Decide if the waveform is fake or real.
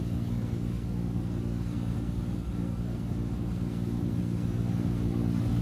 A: fake